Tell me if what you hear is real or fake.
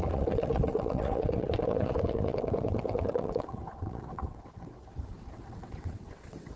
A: fake